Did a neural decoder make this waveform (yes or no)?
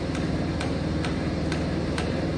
no